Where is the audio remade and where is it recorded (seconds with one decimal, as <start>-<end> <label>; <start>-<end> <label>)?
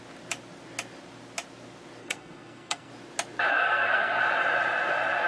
0.0-2.0 recorded; 2.0-2.9 remade; 2.9-3.5 recorded; 3.5-4.2 remade; 4.2-5.3 recorded